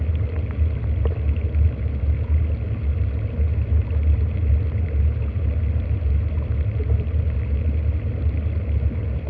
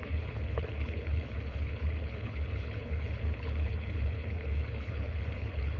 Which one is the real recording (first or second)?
first